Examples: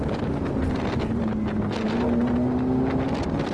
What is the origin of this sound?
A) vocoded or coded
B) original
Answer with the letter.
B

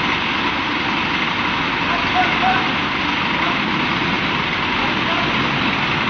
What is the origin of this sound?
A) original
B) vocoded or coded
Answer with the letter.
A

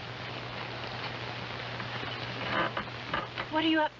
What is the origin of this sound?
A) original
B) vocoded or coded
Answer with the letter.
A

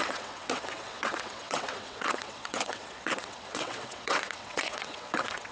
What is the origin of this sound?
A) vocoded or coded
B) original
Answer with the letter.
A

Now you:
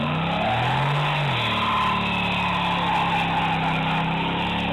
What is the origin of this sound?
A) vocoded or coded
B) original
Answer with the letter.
B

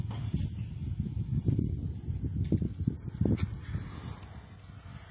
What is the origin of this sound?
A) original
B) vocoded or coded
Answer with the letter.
A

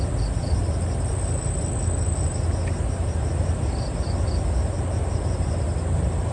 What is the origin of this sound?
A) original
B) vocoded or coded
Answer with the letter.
B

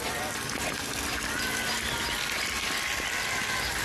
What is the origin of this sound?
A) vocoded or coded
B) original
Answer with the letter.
B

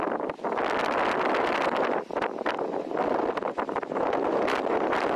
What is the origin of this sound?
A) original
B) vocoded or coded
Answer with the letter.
A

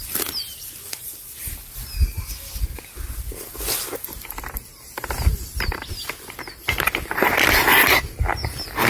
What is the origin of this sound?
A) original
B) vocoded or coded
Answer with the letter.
A